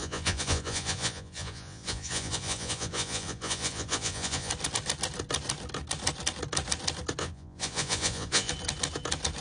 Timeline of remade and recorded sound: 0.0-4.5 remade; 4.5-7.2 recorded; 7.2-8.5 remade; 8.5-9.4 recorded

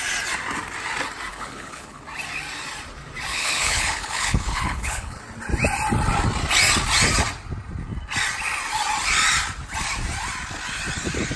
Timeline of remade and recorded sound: 0.0-1.3 recorded; 1.3-2.0 remade; 2.0-3.3 recorded; 3.3-5.2 remade; 5.2-11.4 recorded

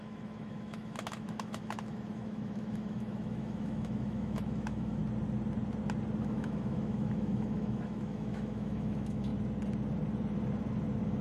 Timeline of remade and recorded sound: 0.0-5.0 remade; 5.0-6.2 recorded; 6.2-9.3 remade; 9.3-11.2 recorded